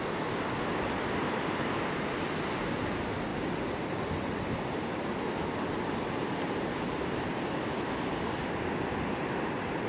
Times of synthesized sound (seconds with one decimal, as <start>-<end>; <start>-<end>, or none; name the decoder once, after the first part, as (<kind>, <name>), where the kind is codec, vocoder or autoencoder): none